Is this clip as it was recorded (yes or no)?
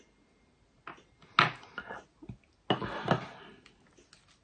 yes